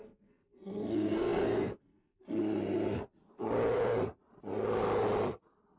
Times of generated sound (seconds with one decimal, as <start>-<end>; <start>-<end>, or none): 0.0-2.2